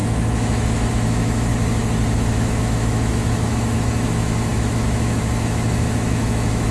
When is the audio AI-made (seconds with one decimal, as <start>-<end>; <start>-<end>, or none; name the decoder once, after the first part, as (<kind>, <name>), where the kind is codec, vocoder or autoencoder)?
0.0-1.5 (autoencoder, DAC-VAE); 2.2-6.7